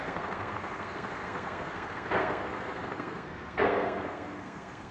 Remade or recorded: remade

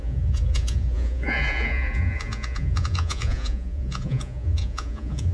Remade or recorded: remade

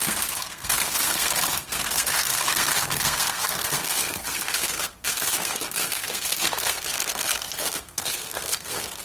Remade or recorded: remade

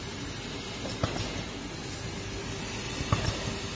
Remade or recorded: recorded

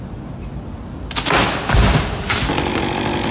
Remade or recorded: recorded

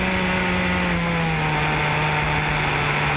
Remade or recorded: recorded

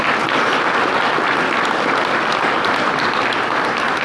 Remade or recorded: recorded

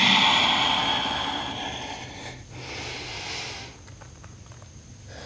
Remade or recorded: recorded